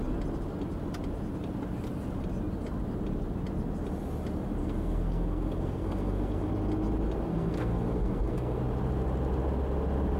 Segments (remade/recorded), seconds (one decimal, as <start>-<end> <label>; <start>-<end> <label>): 0.0-4.6 recorded; 4.6-6.5 remade; 6.5-7.3 recorded; 7.3-8.6 remade; 8.6-10.2 recorded

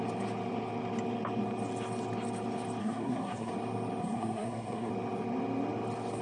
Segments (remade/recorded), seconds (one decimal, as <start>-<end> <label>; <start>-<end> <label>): 0.0-2.8 recorded; 2.8-3.5 remade; 3.5-4.0 recorded; 4.0-4.9 remade; 4.9-6.2 recorded

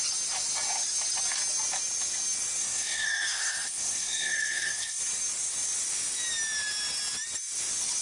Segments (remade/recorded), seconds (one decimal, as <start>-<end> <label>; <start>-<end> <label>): 0.0-2.6 recorded; 2.6-5.0 remade; 5.0-8.0 recorded

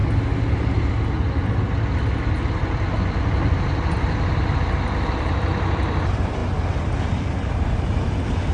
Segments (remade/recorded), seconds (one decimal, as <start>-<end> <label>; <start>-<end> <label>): 0.0-8.5 recorded

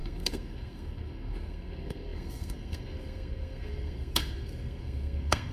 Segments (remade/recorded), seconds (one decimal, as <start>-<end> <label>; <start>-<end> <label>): 0.0-5.5 remade

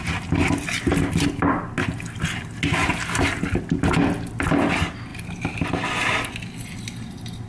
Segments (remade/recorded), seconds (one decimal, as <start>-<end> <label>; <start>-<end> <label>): 0.0-7.5 recorded

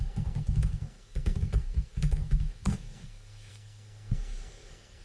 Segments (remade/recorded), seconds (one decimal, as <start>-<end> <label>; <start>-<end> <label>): 0.0-5.0 remade

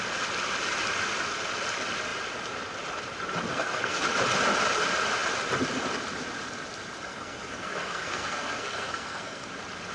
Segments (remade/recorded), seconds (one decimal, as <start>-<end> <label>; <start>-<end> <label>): 0.0-3.5 recorded; 3.5-4.0 remade; 4.0-7.1 recorded; 7.1-9.5 remade; 9.5-9.9 recorded